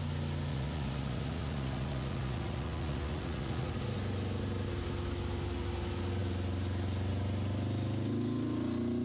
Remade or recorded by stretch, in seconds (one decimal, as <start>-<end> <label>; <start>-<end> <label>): 0.0-0.5 recorded; 0.5-3.7 remade; 3.7-9.0 recorded